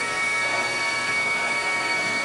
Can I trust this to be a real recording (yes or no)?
no